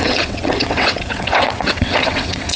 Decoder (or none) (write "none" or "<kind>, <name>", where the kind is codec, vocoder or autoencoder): vocoder, WaveNeXt